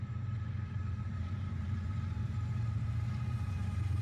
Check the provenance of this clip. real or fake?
fake